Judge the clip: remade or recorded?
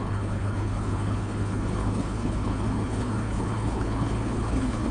remade